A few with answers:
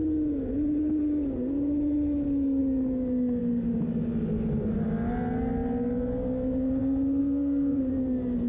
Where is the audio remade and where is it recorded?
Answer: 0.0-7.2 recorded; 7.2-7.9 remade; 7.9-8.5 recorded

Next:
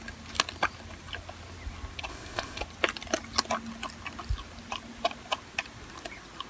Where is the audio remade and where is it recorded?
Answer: 0.0-2.1 recorded; 2.1-2.6 remade; 2.6-6.5 recorded

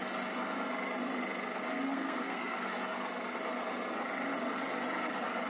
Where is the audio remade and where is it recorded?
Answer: 0.0-1.7 recorded; 1.7-2.7 remade; 2.7-5.5 recorded

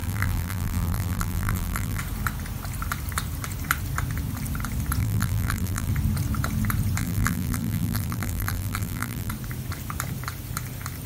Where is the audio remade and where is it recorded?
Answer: 0.0-2.0 remade; 2.0-5.0 recorded; 5.0-5.9 remade; 5.9-7.0 recorded; 7.0-9.3 remade; 9.3-11.1 recorded

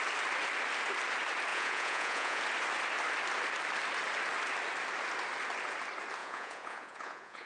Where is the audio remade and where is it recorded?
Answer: 0.0-1.5 recorded; 1.5-2.4 remade; 2.4-6.2 recorded; 6.2-7.5 remade

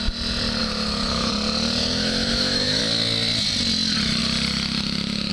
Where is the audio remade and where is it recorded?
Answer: 0.0-0.6 recorded; 0.6-1.3 remade; 1.3-1.8 recorded; 1.8-2.8 remade; 2.8-5.3 recorded